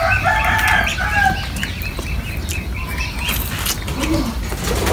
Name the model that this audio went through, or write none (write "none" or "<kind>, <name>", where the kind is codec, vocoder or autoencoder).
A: none